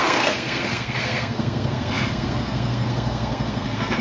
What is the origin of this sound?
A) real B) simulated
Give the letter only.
B